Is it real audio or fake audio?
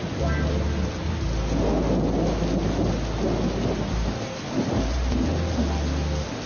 real